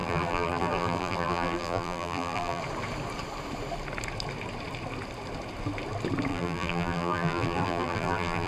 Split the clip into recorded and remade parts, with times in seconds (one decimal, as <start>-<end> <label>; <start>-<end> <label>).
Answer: 0.0-2.6 remade; 2.6-6.3 recorded; 6.3-8.5 remade